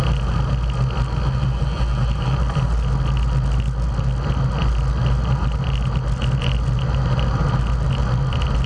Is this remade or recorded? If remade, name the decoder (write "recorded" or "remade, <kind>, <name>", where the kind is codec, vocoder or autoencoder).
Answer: recorded